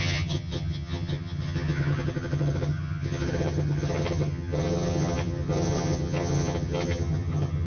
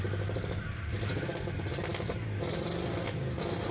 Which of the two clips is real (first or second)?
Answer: second